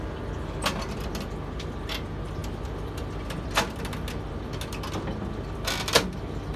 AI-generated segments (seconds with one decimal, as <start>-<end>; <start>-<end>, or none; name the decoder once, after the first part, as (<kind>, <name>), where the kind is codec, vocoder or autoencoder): none